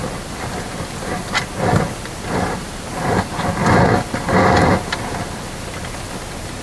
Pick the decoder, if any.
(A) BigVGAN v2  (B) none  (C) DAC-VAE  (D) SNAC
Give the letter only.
B